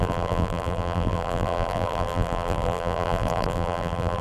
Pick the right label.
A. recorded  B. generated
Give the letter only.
B